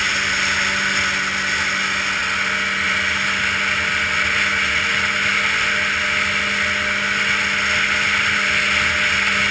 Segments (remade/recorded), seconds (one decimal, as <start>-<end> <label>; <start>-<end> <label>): 0.0-9.5 recorded